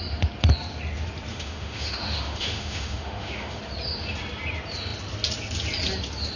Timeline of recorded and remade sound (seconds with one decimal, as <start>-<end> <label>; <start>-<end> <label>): 0.0-1.3 recorded; 1.3-3.6 remade; 3.6-6.4 recorded